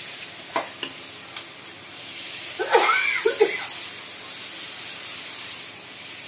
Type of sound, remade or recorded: recorded